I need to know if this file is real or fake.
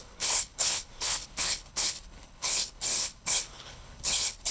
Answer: fake